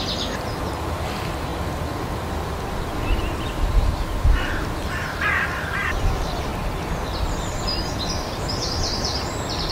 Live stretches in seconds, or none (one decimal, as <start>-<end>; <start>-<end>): 1.5-2.7; 6.5-7.6